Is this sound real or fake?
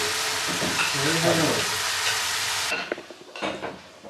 real